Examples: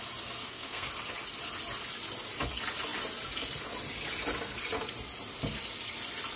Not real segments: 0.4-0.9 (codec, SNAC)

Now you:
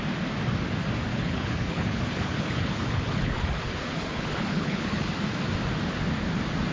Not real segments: 1.1-5.1 (codec, HILCodec)

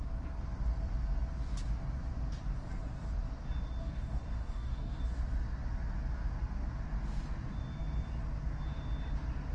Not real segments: 3.8-5.0 (codec, DAC)

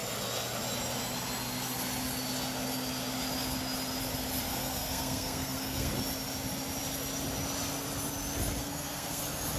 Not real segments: 4.5-5.9 (codec, SNAC); 8.6-9.2

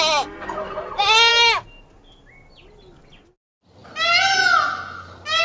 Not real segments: none

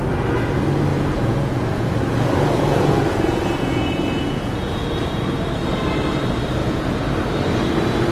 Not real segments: 0.9-5.4 (vocoder, Vocos); 6.6-7.1

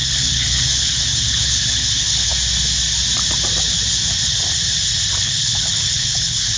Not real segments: 0.0-2.3 (codec, HILCodec); 5.2-6.6